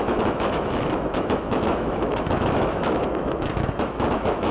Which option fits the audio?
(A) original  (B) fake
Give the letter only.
B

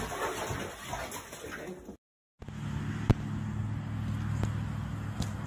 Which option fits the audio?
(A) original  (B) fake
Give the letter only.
A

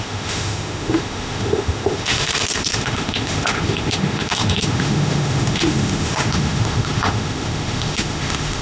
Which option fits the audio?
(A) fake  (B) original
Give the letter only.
A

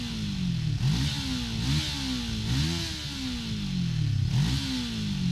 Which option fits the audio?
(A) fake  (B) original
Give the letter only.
B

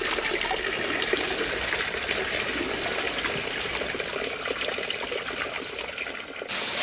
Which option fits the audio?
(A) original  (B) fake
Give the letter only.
A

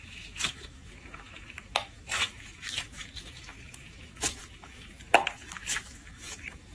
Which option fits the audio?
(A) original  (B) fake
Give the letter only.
B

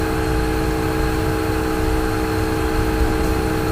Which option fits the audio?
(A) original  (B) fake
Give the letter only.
A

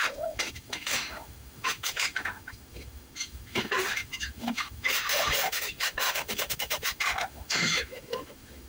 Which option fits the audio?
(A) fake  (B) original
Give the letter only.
A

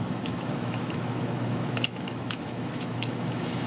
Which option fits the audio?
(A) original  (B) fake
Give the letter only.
B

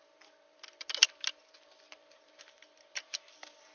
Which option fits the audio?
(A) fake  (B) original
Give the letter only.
B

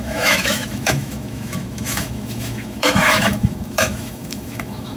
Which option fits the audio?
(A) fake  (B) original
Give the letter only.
A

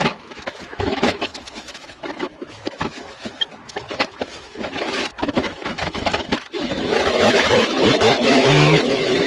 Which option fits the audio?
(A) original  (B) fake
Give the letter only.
B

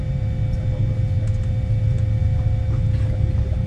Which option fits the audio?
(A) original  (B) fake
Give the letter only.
A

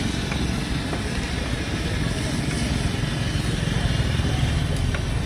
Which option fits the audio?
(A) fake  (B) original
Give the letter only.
B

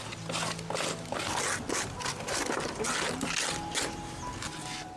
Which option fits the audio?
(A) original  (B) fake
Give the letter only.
A